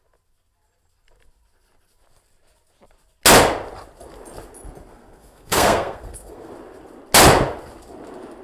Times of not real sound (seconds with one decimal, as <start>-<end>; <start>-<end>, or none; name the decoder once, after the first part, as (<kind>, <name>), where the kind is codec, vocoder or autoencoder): 4.9-6.5 (codec, SNAC)